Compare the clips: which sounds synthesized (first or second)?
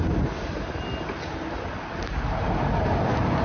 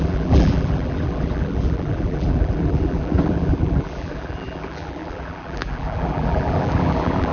second